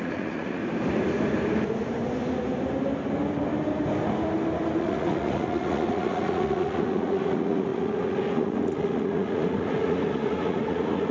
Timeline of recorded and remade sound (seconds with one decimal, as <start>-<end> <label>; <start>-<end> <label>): 0.0-0.6 remade; 0.6-4.8 recorded; 4.8-11.1 remade